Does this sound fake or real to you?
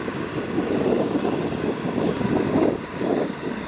fake